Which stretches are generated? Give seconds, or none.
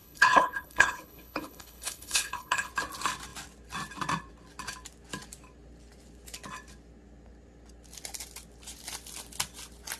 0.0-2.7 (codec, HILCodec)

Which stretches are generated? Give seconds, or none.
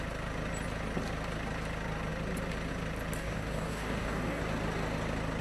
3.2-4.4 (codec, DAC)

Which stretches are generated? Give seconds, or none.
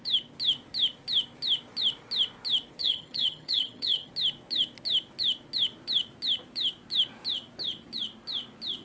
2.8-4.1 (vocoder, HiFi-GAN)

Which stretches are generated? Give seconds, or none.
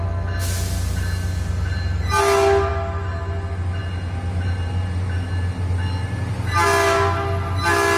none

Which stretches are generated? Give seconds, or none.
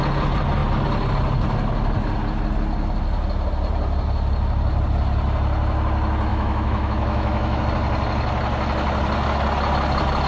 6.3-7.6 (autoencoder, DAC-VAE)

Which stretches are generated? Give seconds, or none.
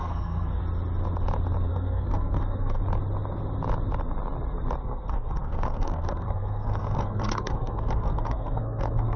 0.0-0.6 (codec, SNAC); 1.7-2.8; 4.8-9.2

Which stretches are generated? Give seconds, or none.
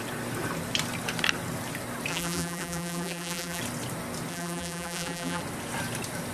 2.1-3.6 (vocoder, BigVGAN v2); 4.3-5.4